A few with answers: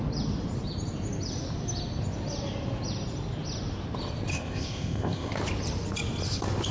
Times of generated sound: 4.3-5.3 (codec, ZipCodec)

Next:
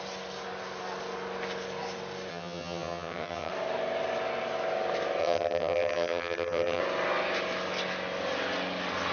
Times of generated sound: 2.3-3.5 (vocoder, HiFi-GAN); 5.2-6.8

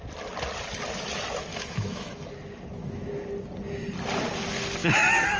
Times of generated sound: 1.5-2.3 (autoencoder, DAC-VAE); 2.8-3.3; 4.8-5.4